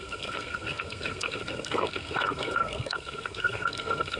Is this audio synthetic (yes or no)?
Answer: yes